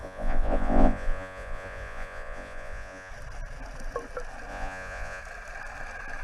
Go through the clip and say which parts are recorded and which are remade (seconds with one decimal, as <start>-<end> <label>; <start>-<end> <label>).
0.0-3.1 remade; 3.1-4.5 recorded; 4.5-5.2 remade; 5.2-6.2 recorded

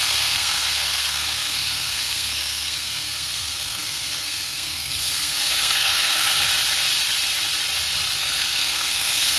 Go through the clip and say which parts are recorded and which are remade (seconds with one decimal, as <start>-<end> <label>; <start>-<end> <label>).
0.0-6.5 remade; 6.5-8.2 recorded; 8.2-9.4 remade

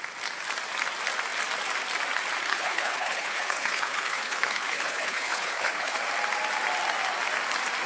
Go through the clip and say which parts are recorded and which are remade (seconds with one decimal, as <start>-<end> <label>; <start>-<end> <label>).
0.0-2.5 recorded; 2.5-6.0 remade; 6.0-7.9 recorded

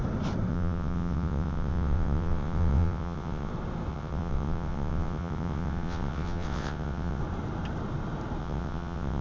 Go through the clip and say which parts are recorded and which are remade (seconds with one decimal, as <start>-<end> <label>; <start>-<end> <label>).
0.0-0.5 recorded; 0.5-3.5 remade; 3.5-3.9 recorded; 3.9-7.2 remade; 7.2-8.4 recorded; 8.4-9.2 remade